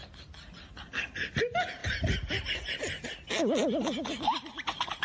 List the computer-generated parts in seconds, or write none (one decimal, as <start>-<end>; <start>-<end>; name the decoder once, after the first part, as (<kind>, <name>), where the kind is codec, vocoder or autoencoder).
none